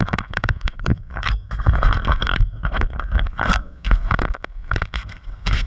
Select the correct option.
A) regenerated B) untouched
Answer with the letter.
A